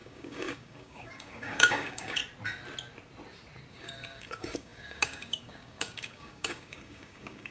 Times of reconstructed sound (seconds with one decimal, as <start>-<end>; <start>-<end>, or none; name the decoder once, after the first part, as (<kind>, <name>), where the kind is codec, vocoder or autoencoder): 0.0-2.2 (codec, DAC); 3.7-7.5